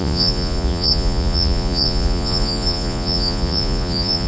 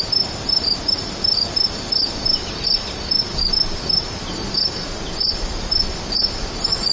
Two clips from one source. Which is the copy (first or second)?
first